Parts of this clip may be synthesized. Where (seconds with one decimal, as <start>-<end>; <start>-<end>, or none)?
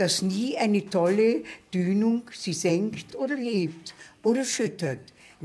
3.1-5.4